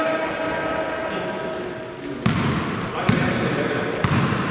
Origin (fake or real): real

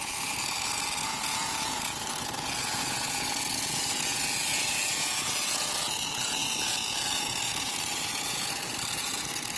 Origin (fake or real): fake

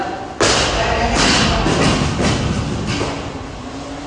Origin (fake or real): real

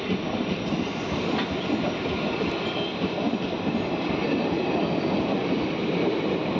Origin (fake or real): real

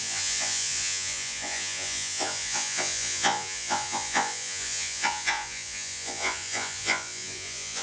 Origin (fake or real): fake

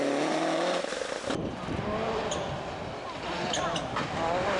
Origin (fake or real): real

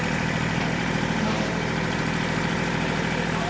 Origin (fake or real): fake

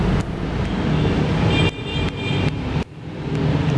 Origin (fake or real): real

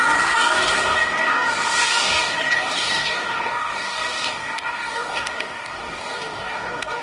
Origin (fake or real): fake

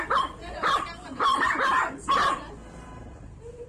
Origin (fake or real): fake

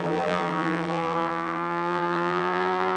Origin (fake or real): fake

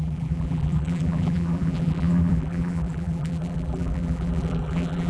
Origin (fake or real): fake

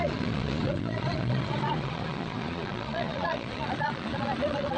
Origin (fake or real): fake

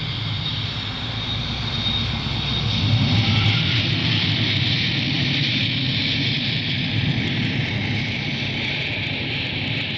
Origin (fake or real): real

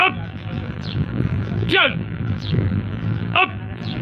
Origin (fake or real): fake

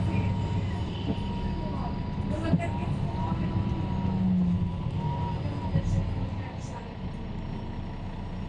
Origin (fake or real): real